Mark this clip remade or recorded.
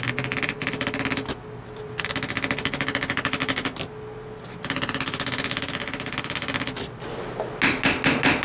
recorded